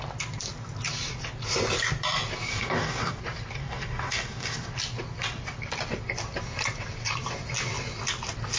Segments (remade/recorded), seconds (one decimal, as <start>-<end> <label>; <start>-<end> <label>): 0.0-2.5 recorded; 2.5-3.2 remade; 3.2-3.6 recorded; 3.6-4.7 remade; 4.7-8.6 recorded